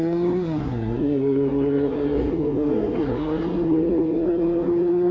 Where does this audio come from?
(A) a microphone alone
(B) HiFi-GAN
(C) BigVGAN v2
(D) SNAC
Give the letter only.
D